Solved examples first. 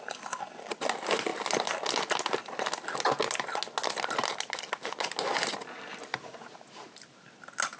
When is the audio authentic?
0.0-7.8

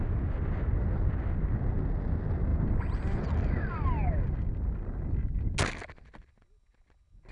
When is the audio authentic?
0.0-7.3

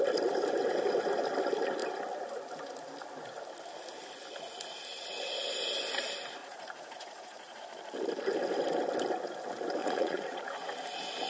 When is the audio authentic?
0.0-6.4; 7.6-9.8; 10.4-11.3

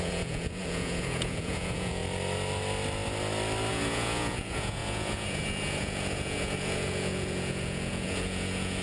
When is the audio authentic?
2.0-3.7